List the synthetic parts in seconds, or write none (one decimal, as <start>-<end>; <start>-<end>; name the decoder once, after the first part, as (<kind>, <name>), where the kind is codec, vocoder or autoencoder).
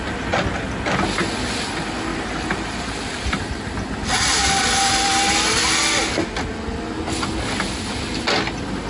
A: 2.1-3.4 (vocoder, BigVGAN v2)